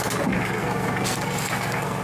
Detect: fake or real fake